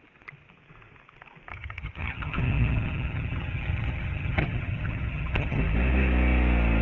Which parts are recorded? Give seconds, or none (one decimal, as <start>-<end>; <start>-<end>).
0.0-1.5; 5.6-6.8